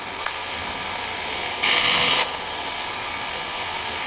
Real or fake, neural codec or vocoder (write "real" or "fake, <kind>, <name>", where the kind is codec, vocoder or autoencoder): fake, codec, SNAC